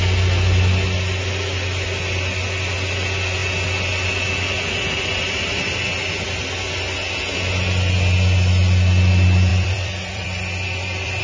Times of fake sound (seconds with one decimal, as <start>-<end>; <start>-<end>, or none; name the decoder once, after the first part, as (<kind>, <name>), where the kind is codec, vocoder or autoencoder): 9.5-11.2 (vocoder, BigVGAN v2)